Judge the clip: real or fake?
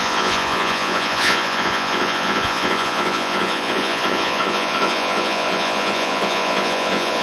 fake